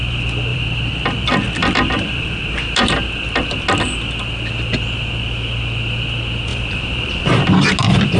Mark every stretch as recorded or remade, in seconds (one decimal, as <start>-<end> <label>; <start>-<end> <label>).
0.0-0.5 recorded; 0.5-1.1 remade; 1.1-1.6 recorded; 1.6-2.9 remade; 2.9-6.5 recorded; 6.5-7.5 remade; 7.5-8.2 recorded